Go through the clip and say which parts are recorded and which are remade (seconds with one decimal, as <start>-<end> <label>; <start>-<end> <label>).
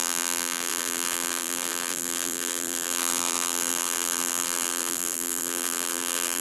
0.0-6.4 remade